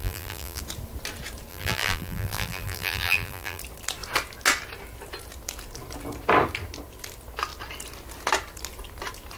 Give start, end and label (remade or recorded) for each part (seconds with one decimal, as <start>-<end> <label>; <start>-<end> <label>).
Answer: 0.0-0.6 remade; 0.6-1.5 recorded; 1.5-3.6 remade; 3.6-9.4 recorded